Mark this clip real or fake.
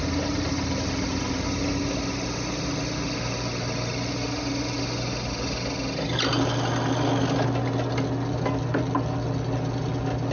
real